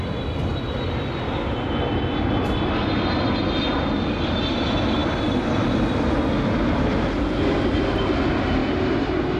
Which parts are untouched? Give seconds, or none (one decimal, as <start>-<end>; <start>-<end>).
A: 0.0-9.4